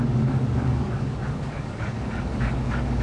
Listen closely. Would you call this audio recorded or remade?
remade